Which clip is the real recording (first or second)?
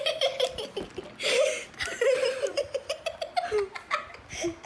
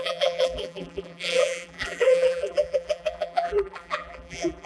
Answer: first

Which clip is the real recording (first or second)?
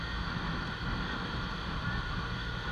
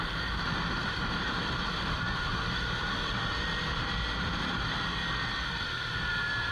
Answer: first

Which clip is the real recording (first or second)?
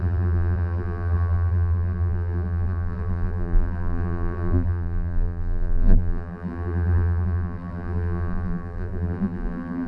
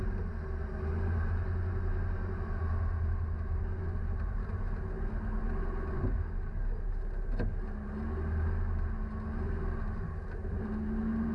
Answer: second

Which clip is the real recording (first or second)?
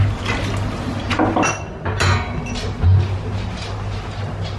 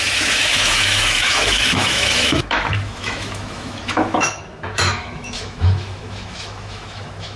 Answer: first